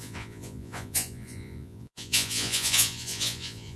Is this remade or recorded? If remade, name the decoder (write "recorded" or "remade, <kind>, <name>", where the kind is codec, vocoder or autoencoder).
remade, vocoder, Vocos